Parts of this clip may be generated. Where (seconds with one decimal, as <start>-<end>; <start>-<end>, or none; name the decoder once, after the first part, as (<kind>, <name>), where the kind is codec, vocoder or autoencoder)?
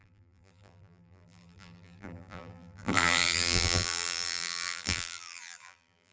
0.0-6.1 (vocoder, BigVGAN v2)